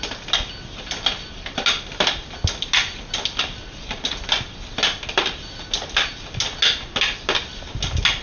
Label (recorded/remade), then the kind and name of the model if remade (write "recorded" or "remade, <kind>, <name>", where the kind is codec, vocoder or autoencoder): recorded